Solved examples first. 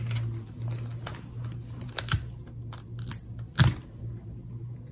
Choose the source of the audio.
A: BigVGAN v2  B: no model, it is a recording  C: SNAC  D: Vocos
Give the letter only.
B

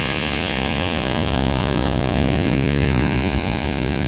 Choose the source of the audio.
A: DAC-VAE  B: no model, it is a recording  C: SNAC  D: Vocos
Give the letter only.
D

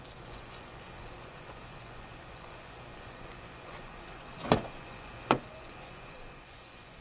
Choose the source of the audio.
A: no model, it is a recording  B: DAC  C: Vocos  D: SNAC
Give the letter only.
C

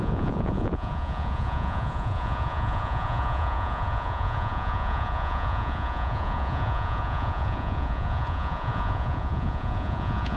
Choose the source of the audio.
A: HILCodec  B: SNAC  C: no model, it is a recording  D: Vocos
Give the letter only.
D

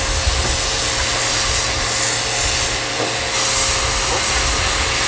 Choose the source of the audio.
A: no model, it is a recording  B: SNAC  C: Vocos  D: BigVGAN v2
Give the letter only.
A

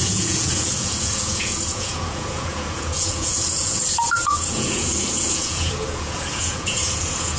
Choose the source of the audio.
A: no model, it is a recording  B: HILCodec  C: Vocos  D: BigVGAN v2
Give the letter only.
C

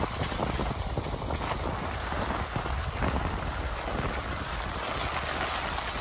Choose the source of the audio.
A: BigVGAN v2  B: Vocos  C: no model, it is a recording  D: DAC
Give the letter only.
C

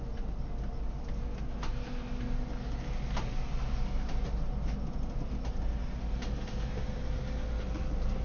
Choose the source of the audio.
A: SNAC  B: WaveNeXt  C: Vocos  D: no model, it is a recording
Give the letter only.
D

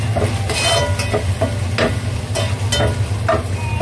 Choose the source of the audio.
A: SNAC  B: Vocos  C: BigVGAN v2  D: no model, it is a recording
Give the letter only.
D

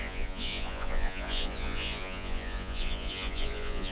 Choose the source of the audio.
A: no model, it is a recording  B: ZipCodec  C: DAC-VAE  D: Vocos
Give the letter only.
D